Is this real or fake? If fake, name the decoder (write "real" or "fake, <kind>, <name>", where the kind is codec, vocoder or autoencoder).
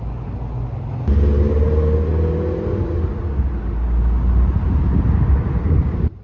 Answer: real